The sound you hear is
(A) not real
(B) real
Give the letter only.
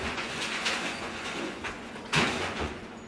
A